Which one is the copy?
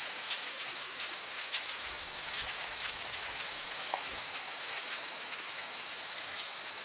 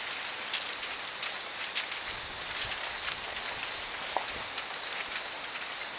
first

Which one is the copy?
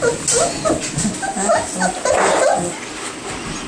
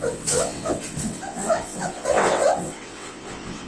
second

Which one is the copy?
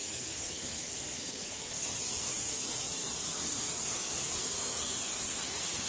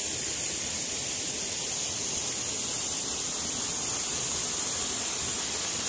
first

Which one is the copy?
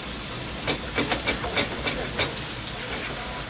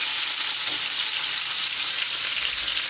second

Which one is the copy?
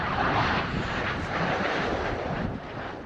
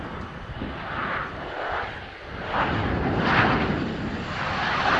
first